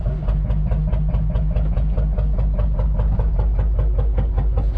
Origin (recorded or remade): recorded